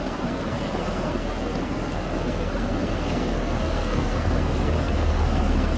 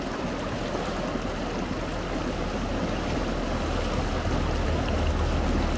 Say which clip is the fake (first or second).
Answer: first